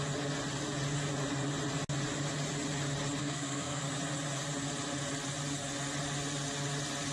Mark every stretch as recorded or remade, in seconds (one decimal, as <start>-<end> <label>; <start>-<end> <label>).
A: 0.0-3.2 recorded; 3.2-3.8 remade; 3.8-7.1 recorded